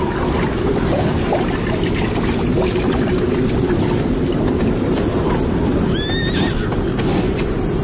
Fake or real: fake